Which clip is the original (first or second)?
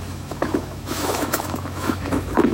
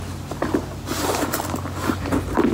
second